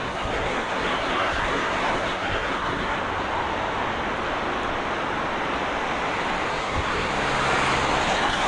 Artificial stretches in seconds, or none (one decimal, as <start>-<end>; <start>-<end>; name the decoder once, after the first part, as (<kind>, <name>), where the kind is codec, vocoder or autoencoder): 0.0-3.0 (codec, SNAC); 6.5-7.1; 8.1-8.5